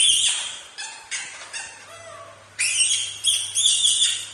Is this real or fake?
real